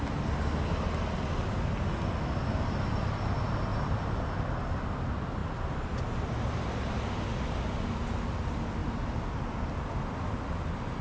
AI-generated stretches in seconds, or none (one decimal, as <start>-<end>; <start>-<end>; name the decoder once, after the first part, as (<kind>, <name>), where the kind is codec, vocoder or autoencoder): none

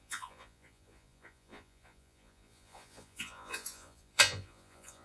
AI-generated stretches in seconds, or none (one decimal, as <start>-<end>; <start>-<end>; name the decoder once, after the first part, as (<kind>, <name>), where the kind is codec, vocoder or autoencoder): 0.0-5.0 (vocoder, Vocos)

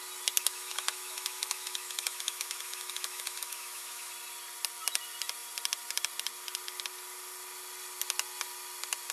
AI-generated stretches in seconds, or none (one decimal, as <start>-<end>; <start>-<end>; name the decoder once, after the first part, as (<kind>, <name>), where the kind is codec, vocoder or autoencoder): 0.4-4.1 (autoencoder, DAC-VAE)

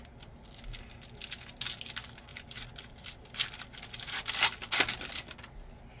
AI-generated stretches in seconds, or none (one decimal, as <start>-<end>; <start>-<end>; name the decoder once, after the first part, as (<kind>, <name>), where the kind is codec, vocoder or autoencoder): none

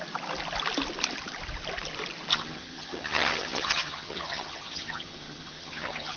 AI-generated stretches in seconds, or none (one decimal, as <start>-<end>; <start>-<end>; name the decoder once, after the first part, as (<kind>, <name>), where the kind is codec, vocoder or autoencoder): 2.3-6.2 (vocoder, HiFi-GAN)

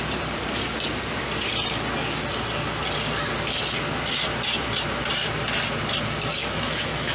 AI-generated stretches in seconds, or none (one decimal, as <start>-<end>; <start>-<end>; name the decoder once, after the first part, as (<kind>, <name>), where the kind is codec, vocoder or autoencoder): 6.4-7.1 (autoencoder, DAC-VAE)